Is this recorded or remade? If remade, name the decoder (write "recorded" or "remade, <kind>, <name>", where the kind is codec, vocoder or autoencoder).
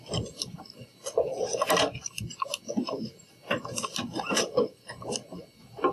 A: recorded